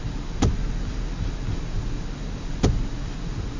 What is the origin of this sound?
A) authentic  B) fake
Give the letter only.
A